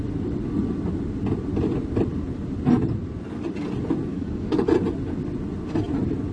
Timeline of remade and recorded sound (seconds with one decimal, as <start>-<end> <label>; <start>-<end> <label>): 0.0-4.1 recorded; 4.1-4.7 remade; 4.7-6.3 recorded

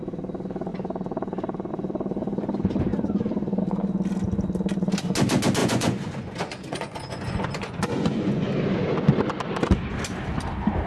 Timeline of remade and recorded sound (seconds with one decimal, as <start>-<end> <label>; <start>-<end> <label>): 0.0-2.9 recorded; 2.9-3.6 remade; 3.6-5.6 recorded; 5.6-8.5 remade; 8.5-10.9 recorded

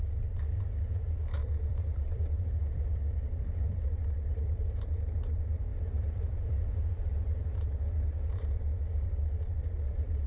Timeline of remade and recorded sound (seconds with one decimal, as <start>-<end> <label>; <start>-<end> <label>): 0.0-1.4 recorded; 1.4-2.2 remade; 2.2-5.7 recorded; 5.7-9.1 remade; 9.1-10.3 recorded

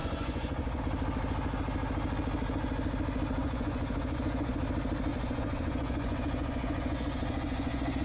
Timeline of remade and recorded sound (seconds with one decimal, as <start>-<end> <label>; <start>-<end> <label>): 0.0-0.8 remade; 0.8-3.4 recorded; 3.4-4.6 remade; 4.6-5.1 recorded; 5.1-8.0 remade

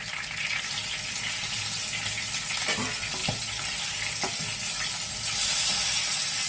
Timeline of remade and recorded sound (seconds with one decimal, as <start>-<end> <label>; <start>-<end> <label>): 0.0-3.2 recorded; 3.2-4.3 remade; 4.3-6.5 recorded

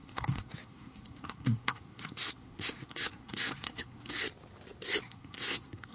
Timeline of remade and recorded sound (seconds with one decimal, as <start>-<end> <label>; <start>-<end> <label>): 0.0-4.2 remade; 4.2-5.0 recorded; 5.0-5.9 remade

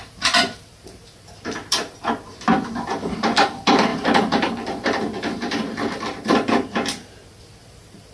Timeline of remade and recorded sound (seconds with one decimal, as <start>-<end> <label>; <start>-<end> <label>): 0.0-8.1 remade